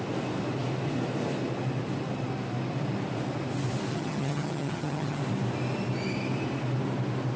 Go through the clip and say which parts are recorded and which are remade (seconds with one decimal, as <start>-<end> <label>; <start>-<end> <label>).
0.0-3.9 recorded; 3.9-5.2 remade; 5.2-7.4 recorded